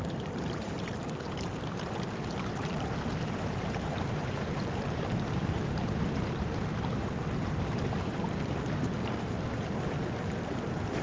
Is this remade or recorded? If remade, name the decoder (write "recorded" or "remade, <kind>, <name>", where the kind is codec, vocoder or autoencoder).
remade, vocoder, BigVGAN v2